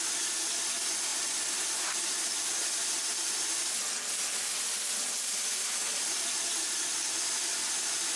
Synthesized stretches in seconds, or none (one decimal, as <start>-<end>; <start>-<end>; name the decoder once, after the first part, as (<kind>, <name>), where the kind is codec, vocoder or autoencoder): 1.1-2.1 (vocoder, BigVGAN v2); 2.6-7.0